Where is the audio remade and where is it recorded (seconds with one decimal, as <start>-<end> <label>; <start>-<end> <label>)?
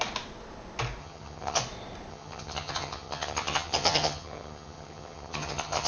0.0-1.0 recorded; 1.0-1.6 remade; 1.6-2.1 recorded; 2.1-5.9 remade